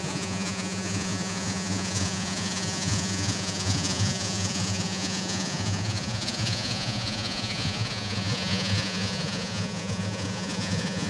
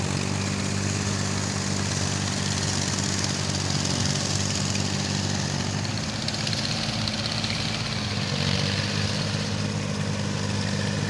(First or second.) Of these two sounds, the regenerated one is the first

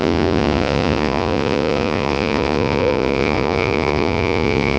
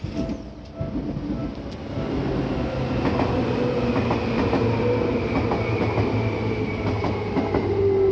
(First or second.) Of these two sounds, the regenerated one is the first